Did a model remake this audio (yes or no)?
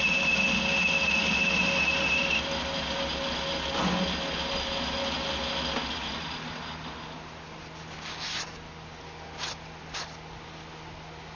no